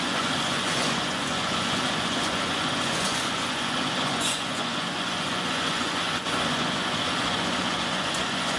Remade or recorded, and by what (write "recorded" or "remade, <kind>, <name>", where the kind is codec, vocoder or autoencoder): remade, vocoder, Vocos